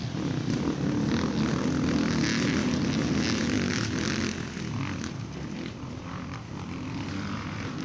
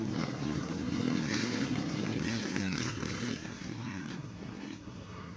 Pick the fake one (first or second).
second